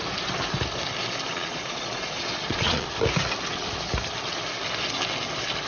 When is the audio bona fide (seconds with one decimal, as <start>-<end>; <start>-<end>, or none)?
0.0-1.3; 2.9-5.7